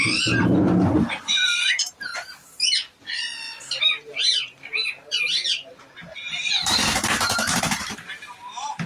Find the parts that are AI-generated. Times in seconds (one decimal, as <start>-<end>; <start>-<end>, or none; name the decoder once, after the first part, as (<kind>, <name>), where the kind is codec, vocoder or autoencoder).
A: 0.0-2.1 (vocoder, BigVGAN v2); 3.8-8.9